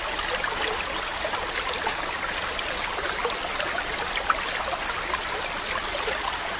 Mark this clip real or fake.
real